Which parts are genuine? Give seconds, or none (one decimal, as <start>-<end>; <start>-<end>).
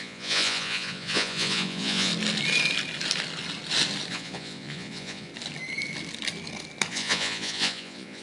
2.1-4.1; 5.3-6.9